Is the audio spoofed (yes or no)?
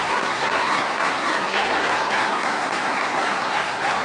yes